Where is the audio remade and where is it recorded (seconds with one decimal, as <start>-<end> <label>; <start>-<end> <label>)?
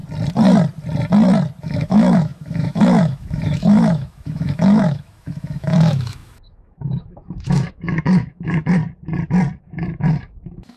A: 0.0-1.6 recorded; 1.6-8.8 remade; 8.8-9.6 recorded; 9.6-10.8 remade